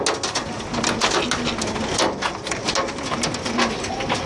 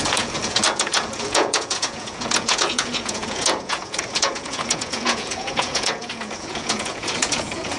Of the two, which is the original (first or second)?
first